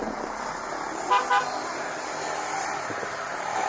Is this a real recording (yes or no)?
yes